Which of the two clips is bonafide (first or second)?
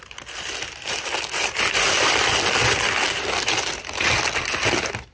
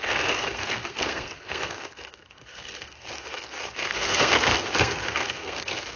first